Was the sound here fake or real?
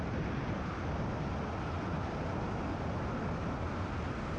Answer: real